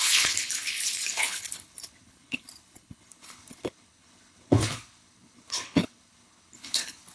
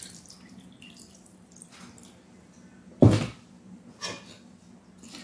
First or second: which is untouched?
second